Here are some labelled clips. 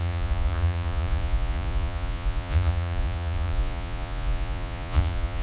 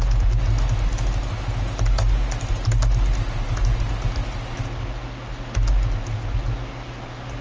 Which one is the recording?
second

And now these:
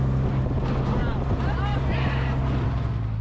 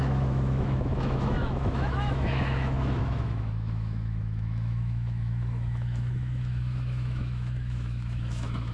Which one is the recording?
first